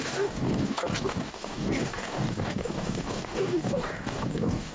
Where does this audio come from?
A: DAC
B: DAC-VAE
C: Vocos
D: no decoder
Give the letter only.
A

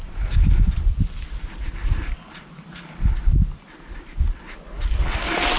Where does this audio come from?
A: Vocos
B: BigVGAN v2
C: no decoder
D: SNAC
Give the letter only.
B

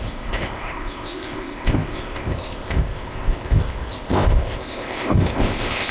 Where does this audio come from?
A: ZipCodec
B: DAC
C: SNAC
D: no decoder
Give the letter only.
A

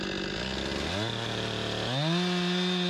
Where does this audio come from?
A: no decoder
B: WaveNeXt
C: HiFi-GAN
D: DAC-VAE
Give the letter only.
A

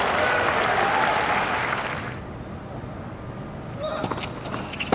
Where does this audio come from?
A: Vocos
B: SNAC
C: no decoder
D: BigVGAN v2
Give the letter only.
C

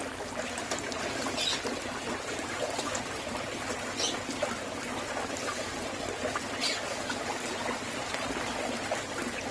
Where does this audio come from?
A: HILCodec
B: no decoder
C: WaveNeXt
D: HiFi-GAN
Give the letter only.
B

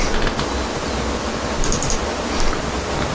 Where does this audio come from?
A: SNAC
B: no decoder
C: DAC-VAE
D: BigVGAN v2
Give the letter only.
B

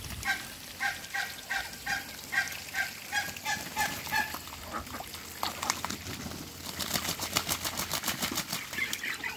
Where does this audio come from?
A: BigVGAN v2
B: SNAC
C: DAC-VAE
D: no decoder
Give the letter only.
D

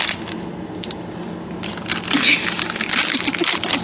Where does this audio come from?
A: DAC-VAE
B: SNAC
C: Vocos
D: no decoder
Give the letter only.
D